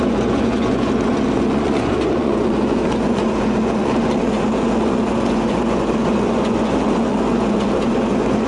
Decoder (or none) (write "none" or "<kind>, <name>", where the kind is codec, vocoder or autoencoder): vocoder, Vocos